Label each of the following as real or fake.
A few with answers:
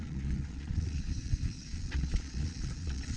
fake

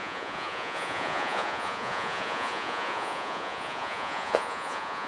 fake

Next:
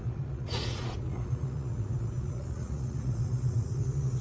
fake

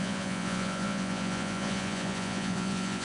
fake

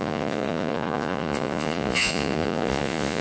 fake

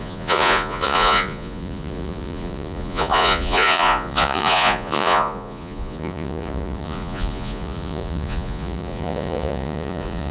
fake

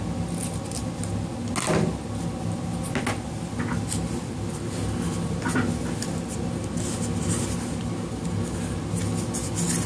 real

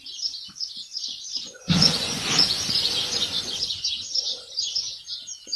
fake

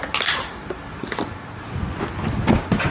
real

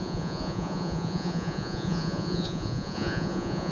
fake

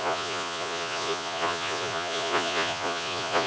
fake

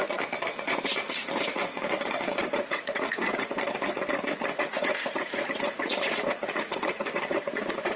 fake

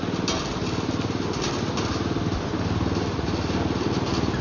real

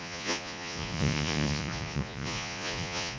fake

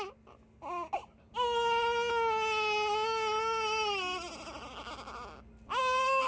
real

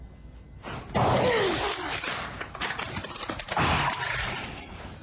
real